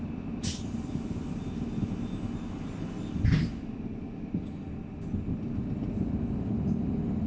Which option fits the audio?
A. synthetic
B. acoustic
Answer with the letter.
B